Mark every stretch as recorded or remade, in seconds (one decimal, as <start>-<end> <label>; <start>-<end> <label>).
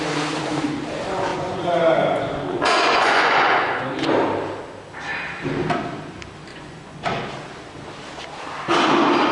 0.0-1.3 recorded; 1.3-3.8 remade; 3.8-6.5 recorded; 6.5-7.2 remade; 7.2-9.3 recorded